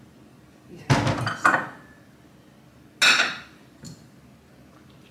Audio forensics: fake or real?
real